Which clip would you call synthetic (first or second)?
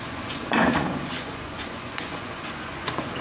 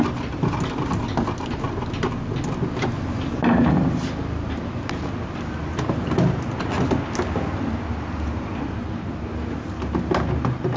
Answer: first